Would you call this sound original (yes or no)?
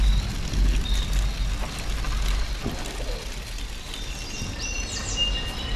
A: yes